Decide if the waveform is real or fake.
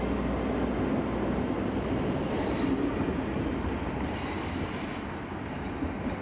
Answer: real